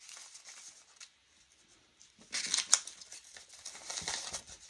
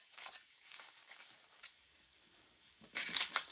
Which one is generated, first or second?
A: second